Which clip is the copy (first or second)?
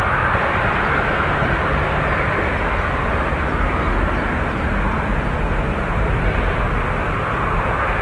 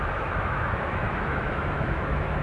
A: second